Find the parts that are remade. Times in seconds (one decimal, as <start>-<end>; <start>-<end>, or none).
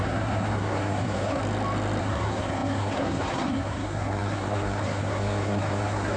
0.0-1.4; 2.0-6.2